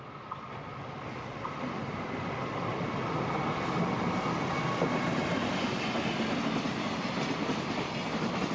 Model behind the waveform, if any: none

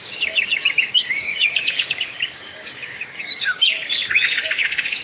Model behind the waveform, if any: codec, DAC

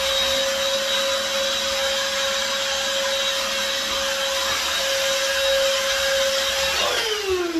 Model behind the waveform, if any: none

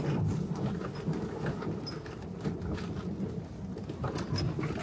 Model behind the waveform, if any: none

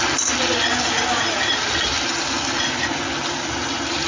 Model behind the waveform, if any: none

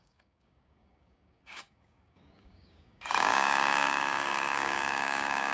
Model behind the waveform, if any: codec, DAC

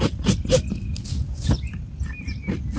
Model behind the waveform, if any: none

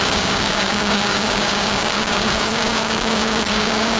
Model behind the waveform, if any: codec, DAC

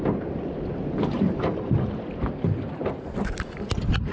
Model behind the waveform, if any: none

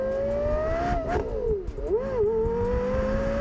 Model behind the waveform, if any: none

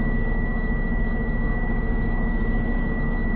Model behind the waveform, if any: codec, DAC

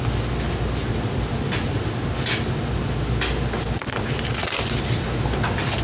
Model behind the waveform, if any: none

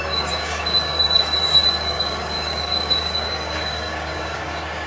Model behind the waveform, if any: codec, DAC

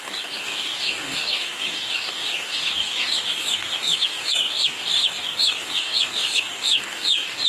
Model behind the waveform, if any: codec, DAC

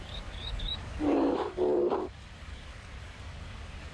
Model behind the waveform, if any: codec, DAC